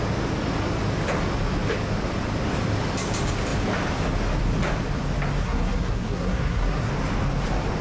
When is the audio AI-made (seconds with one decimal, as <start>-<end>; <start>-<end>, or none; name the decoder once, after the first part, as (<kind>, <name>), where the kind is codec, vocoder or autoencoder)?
5.4-6.9 (codec, SNAC)